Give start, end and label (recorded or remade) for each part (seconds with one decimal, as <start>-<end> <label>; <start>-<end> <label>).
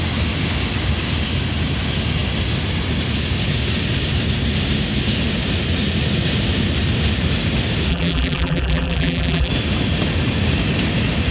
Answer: 0.0-7.9 recorded; 7.9-9.5 remade; 9.5-11.3 recorded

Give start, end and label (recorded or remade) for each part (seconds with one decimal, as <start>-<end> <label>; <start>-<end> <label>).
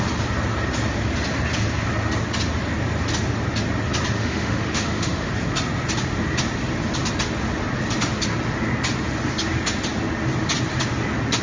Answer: 0.0-4.2 recorded; 4.2-5.3 remade; 5.3-11.4 recorded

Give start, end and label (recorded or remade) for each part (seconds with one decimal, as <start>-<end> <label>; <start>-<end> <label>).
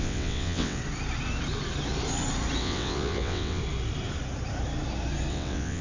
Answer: 0.0-0.8 remade; 0.8-2.6 recorded; 2.6-3.6 remade; 3.6-5.3 recorded; 5.3-5.8 remade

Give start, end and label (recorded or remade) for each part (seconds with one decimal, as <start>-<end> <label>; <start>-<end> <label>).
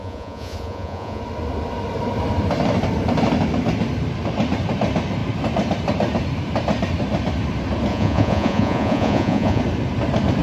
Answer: 0.0-1.2 remade; 1.2-7.9 recorded; 7.9-9.6 remade; 9.6-10.4 recorded